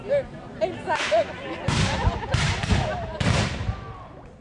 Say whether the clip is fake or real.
real